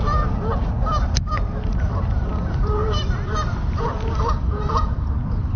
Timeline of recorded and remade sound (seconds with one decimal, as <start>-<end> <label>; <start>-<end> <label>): 0.0-1.1 remade; 1.1-1.7 recorded; 1.7-5.6 remade